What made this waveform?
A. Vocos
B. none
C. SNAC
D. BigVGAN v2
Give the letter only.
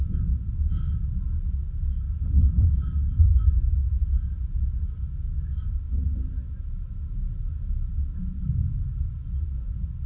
B